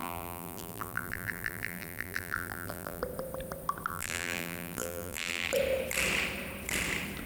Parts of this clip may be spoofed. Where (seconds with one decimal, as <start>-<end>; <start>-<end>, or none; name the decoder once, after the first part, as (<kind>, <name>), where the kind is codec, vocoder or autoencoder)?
0.0-3.0 (vocoder, BigVGAN v2); 3.9-5.5